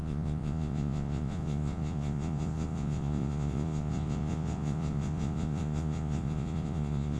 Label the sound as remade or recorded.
remade